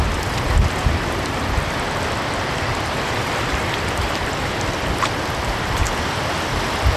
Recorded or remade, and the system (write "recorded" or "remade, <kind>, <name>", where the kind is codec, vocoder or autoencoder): recorded